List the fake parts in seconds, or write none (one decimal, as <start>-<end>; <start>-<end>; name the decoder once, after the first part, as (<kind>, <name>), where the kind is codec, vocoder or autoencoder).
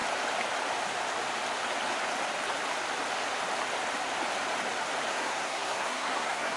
5.1-6.6 (codec, SNAC)